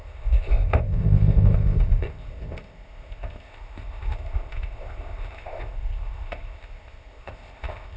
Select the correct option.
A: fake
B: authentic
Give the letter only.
A